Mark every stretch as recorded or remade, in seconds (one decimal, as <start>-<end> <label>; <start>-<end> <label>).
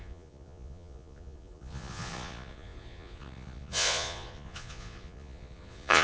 0.0-6.0 remade